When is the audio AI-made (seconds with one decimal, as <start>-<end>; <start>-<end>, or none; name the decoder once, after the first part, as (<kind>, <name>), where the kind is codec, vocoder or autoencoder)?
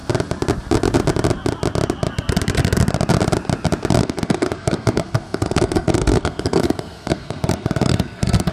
4.0-8.5 (codec, SNAC)